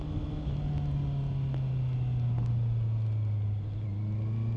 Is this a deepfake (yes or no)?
no